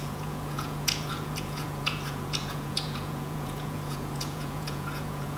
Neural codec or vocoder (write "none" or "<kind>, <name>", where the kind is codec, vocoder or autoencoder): vocoder, Vocos